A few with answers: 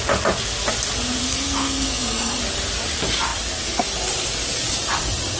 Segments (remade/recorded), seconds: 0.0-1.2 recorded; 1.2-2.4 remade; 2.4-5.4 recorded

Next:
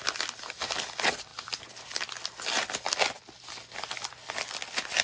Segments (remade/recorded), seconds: 0.0-5.0 recorded

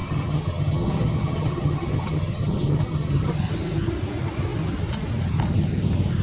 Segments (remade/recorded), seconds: 0.0-3.3 remade; 3.3-6.2 recorded

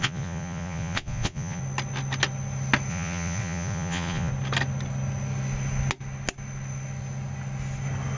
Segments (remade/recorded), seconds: 0.0-1.6 remade; 1.6-2.9 recorded; 2.9-4.3 remade; 4.3-8.2 recorded

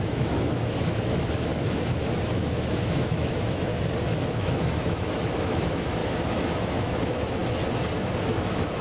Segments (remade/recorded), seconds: 0.0-3.7 remade; 3.7-4.3 recorded; 4.3-7.4 remade; 7.4-8.2 recorded; 8.2-8.8 remade

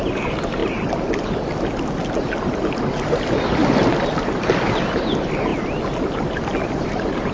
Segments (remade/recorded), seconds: 0.0-0.6 remade; 0.6-5.0 recorded; 5.0-5.5 remade; 5.5-6.8 recorded; 6.8-7.3 remade

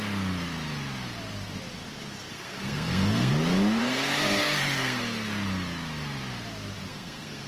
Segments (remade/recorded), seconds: 0.0-2.3 recorded; 2.3-3.3 remade; 3.3-3.8 recorded; 3.8-5.0 remade; 5.0-6.9 recorded; 6.9-7.5 remade

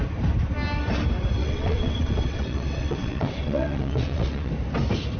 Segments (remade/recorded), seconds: 0.0-1.4 recorded; 1.4-4.5 remade; 4.5-5.2 recorded